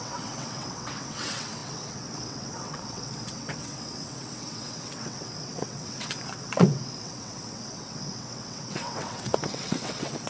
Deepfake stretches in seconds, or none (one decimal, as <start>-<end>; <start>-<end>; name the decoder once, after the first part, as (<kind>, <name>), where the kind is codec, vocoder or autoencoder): 0.0-10.3 (vocoder, WaveNeXt)